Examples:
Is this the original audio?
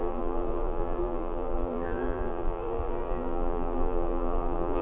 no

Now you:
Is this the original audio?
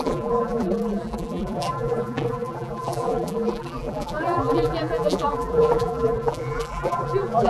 no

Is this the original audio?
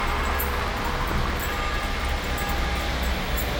yes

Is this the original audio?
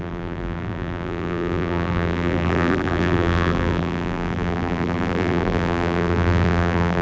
no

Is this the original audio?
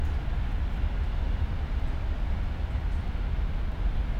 yes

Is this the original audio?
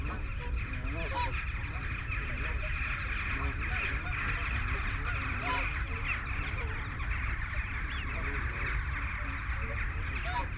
yes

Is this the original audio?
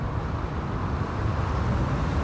no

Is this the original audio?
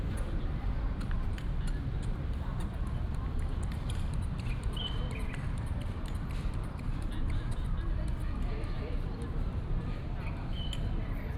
no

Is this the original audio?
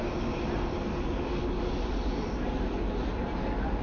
yes